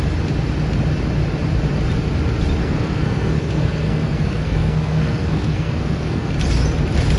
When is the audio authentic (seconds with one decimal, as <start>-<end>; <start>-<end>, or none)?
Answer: 0.0-2.6; 6.3-7.2